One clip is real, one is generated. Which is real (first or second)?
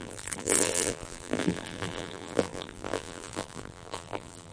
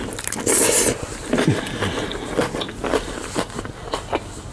second